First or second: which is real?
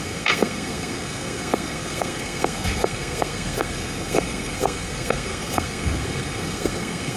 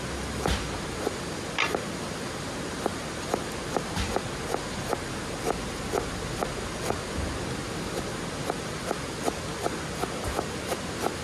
second